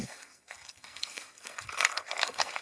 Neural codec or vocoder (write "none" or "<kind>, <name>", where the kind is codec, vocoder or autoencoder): codec, SNAC